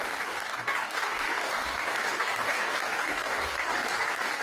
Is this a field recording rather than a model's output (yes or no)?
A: no